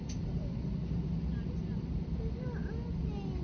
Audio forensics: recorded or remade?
recorded